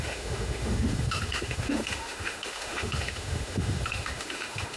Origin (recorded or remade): remade